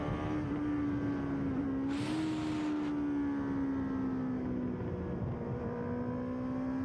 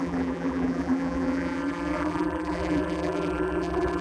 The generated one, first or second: second